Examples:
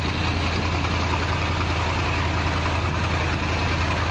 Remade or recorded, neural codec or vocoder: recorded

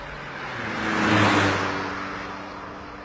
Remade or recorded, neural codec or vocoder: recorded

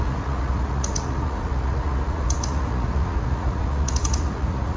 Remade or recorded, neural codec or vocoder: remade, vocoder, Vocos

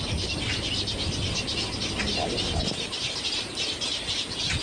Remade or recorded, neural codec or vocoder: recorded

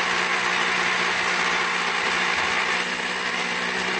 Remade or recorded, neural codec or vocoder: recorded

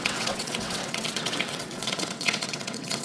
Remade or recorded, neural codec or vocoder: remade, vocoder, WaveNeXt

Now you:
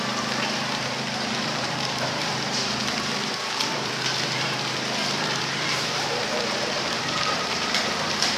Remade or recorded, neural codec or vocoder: remade, vocoder, BigVGAN v2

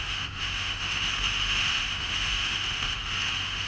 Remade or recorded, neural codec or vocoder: remade, autoencoder, DAC-VAE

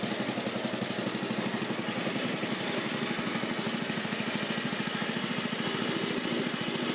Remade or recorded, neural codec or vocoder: recorded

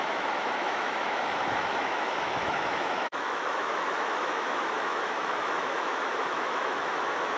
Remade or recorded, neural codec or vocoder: remade, autoencoder, DAC-VAE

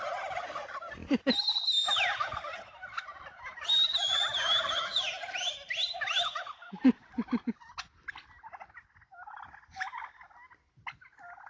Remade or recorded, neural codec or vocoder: recorded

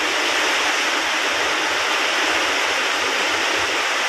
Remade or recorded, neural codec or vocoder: recorded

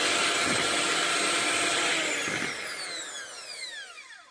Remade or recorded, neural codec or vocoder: recorded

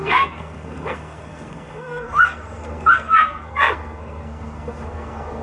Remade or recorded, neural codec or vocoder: remade, codec, SNAC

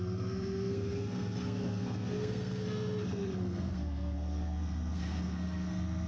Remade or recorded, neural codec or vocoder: remade, codec, SNAC